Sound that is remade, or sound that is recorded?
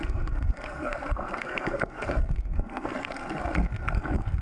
remade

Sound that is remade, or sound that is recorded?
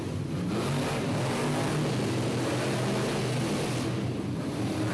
recorded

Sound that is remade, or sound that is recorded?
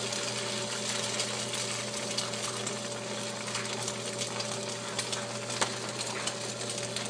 recorded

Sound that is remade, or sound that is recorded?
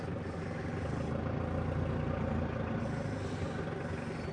recorded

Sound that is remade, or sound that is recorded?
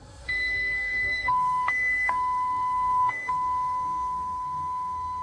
remade